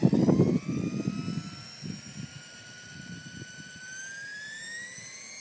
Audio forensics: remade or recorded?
recorded